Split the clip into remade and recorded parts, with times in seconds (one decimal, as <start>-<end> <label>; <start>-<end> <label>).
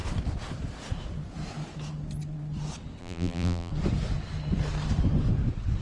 0.0-3.0 recorded; 3.0-3.7 remade; 3.7-5.8 recorded